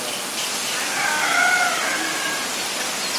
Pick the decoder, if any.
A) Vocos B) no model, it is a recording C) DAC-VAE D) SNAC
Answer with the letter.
B